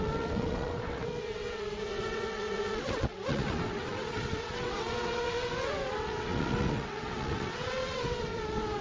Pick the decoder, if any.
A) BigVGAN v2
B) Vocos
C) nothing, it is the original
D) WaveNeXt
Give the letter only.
D